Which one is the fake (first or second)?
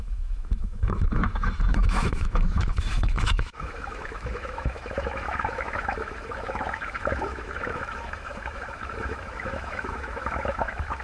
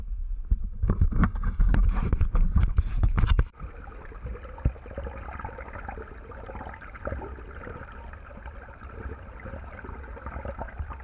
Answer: first